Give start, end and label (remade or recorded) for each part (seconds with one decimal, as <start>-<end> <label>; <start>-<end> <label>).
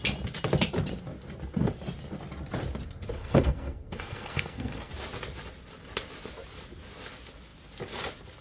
0.0-3.2 recorded; 3.2-4.9 remade; 4.9-8.4 recorded